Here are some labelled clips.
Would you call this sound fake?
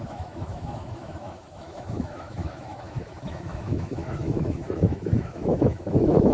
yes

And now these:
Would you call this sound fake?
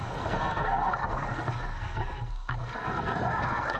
yes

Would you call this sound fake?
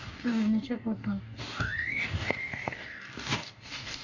yes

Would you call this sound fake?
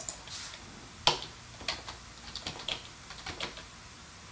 no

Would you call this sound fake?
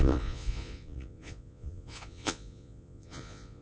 yes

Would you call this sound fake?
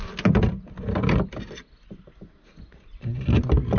no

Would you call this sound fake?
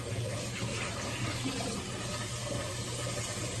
no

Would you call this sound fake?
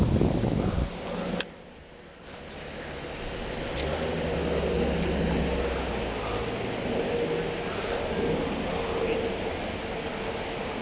no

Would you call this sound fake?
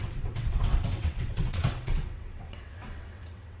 yes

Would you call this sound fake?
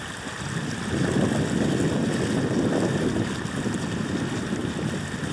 no